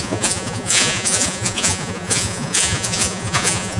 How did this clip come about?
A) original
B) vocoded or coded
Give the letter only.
B